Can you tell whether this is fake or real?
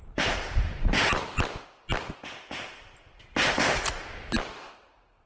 fake